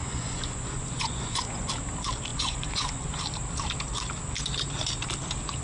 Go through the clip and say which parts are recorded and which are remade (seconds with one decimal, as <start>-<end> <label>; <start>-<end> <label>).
0.0-1.7 remade; 1.7-2.3 recorded; 2.3-3.2 remade; 3.2-5.6 recorded